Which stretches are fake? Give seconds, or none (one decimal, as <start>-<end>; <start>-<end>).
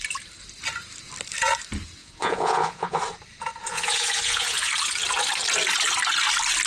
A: 2.0-3.0; 3.7-4.7